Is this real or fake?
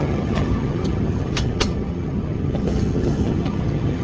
fake